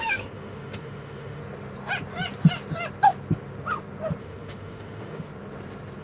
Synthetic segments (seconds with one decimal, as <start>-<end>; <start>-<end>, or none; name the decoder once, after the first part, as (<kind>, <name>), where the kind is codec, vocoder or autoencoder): 0.0-1.4 (autoencoder, DAC-VAE); 4.2-5.3